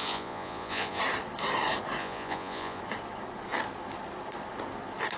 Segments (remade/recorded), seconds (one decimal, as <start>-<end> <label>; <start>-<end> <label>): 0.0-1.0 remade; 1.0-2.0 recorded; 2.0-2.8 remade; 2.8-5.2 recorded